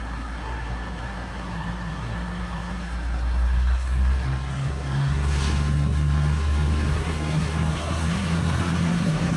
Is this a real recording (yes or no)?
no